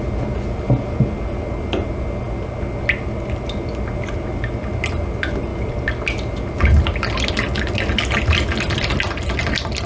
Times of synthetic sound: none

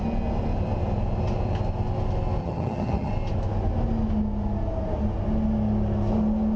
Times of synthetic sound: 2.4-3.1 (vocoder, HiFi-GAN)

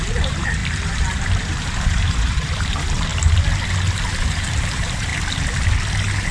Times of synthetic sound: 0.0-3.1 (vocoder, BigVGAN v2); 3.9-5.1